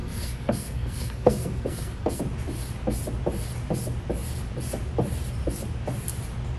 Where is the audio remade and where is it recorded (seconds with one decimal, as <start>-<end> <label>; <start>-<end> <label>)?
0.0-2.2 remade; 2.2-6.6 recorded